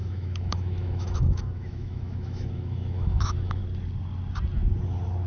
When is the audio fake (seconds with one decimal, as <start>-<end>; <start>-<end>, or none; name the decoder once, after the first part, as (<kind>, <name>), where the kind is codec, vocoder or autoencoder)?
0.0-3.6 (autoencoder, DAC-VAE)